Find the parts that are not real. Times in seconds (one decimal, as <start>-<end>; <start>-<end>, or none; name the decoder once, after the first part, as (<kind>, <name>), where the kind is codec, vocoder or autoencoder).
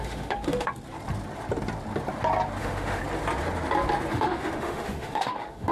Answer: 0.0-0.7 (autoencoder, DAC-VAE); 2.6-3.0; 4.1-5.7